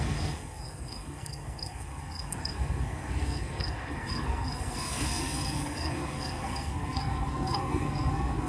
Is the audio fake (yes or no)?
yes